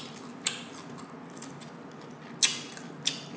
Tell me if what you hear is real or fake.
real